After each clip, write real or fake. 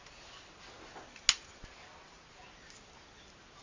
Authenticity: real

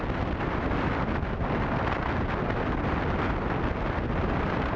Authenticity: real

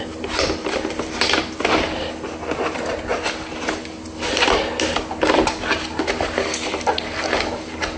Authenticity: real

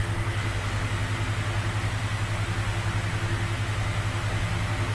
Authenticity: real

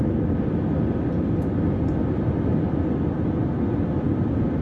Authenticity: real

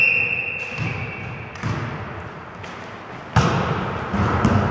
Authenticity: real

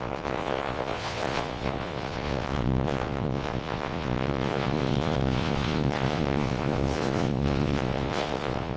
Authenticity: fake